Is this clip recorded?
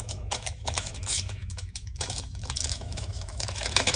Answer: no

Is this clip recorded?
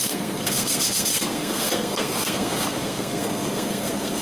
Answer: no